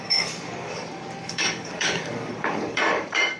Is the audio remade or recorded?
remade